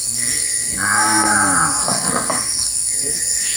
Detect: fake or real fake